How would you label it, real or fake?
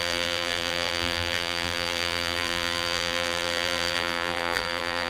fake